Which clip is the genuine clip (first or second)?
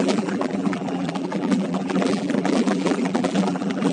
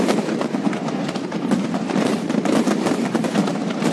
second